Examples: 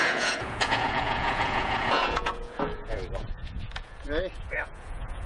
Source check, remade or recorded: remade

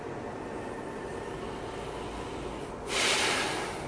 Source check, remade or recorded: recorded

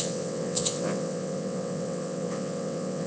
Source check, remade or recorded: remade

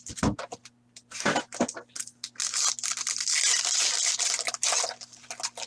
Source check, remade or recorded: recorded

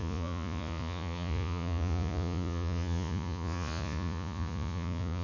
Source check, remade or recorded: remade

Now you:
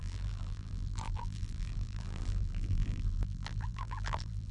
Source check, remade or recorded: remade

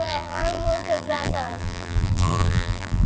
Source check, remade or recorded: remade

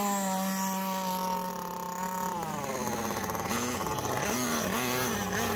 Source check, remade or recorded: recorded